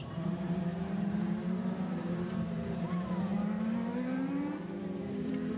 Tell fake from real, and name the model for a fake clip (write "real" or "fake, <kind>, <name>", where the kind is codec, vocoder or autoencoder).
fake, vocoder, BigVGAN v2